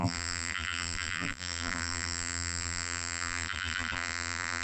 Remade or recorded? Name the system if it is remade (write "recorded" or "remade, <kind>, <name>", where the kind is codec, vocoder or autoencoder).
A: remade, vocoder, BigVGAN v2